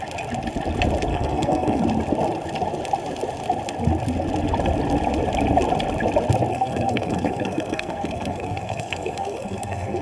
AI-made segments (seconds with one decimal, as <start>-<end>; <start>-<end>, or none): 1.1-1.8; 6.5-10.0